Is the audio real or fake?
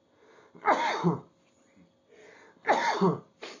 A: real